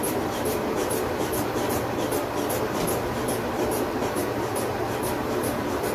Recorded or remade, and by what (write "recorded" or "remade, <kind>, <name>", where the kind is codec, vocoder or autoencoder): remade, vocoder, BigVGAN v2